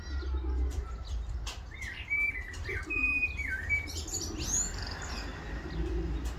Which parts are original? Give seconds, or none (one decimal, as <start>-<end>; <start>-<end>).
0.0-6.4